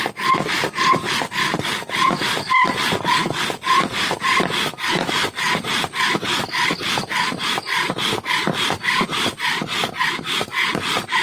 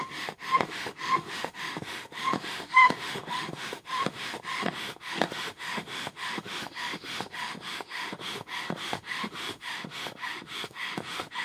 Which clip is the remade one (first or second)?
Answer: second